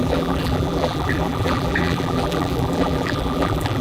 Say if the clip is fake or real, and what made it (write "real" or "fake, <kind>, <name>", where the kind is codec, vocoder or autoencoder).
fake, vocoder, BigVGAN v2